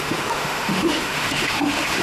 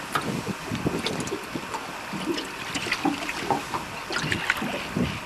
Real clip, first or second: second